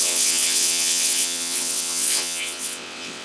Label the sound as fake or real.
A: fake